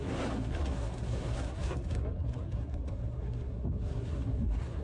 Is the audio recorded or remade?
remade